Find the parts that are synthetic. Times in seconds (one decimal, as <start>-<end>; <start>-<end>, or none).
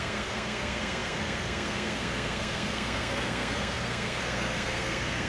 0.0-5.3